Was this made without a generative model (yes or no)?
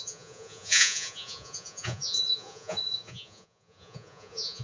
no